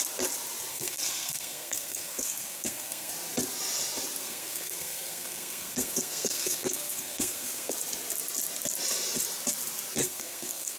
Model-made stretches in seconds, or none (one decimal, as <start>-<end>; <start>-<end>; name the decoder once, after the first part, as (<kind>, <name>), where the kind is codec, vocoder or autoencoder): 0.7-3.1 (codec, SNAC); 4.2-7.7; 10.0-10.8